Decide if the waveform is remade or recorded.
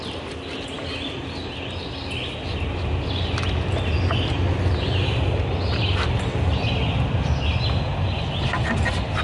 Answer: recorded